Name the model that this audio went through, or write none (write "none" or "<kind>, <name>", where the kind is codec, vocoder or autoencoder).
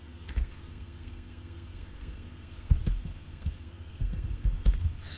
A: codec, SNAC